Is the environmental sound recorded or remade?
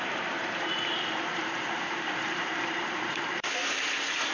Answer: remade